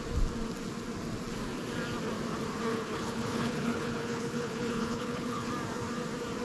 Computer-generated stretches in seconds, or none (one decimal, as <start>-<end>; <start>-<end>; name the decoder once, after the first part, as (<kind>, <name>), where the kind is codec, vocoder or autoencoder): 2.7-5.5 (codec, HILCodec)